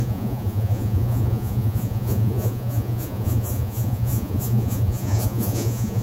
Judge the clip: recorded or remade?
remade